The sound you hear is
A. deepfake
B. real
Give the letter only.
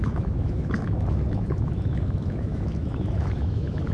A